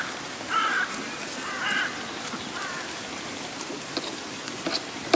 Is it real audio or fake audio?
real